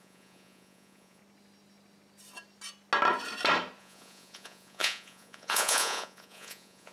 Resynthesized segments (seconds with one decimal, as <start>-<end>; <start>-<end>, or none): 0.0-1.2; 3.8-6.9